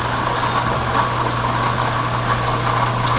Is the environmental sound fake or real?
real